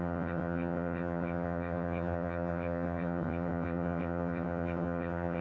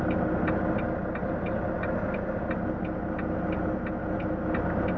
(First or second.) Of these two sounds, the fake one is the first